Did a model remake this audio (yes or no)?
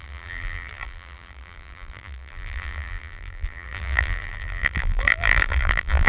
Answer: yes